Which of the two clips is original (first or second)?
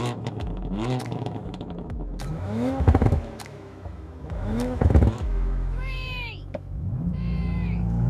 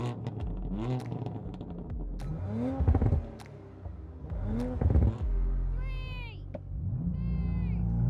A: second